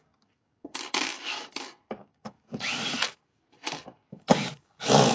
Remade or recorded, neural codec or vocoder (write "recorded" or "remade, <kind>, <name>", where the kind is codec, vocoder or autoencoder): remade, codec, DAC